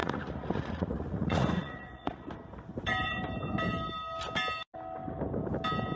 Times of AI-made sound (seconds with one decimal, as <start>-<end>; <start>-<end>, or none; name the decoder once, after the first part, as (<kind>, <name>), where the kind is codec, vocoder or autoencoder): 0.0-2.3 (vocoder, Vocos)